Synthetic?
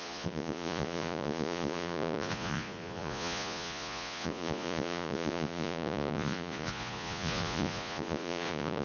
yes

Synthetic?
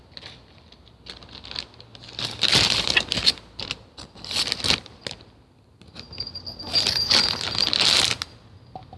no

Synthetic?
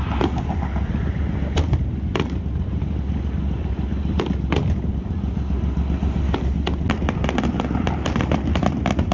no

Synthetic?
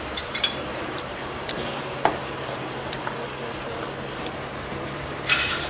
yes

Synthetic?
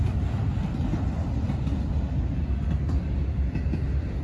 no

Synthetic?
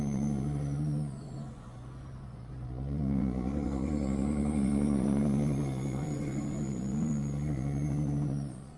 yes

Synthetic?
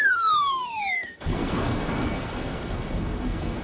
yes